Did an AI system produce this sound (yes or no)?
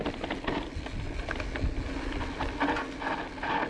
no